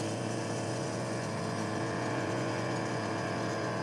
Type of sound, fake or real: fake